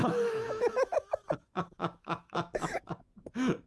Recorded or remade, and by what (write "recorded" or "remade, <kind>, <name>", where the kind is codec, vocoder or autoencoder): remade, autoencoder, DAC-VAE